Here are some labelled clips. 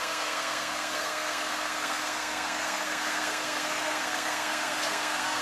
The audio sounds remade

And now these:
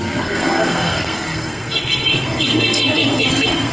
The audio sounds remade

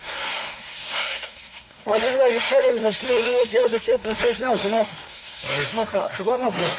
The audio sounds remade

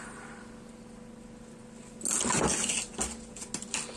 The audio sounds recorded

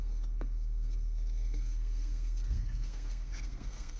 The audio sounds remade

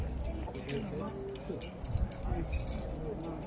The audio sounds recorded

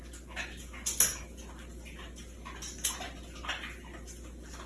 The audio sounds recorded